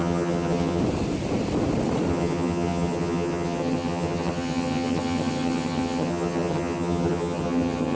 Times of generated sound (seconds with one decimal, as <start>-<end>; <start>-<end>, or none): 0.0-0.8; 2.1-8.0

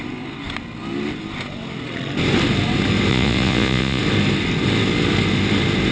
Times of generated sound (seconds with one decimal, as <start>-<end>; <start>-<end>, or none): 3.1-4.0

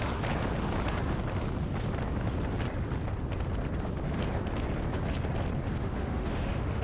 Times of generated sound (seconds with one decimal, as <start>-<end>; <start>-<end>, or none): 5.8-6.8

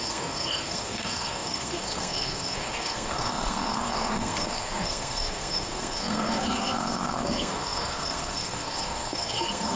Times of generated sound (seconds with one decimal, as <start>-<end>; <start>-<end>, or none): 0.0-9.8

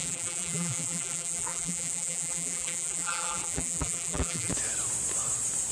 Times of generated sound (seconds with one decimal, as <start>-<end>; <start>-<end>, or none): 0.0-4.5

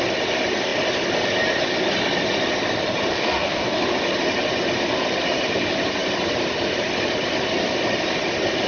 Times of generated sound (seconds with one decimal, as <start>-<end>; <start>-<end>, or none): 3.1-3.8

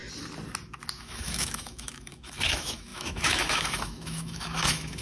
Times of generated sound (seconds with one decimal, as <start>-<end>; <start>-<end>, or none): 1.0-5.0